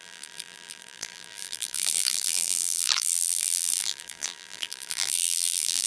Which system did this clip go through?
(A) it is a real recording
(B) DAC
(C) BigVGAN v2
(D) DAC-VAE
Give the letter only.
C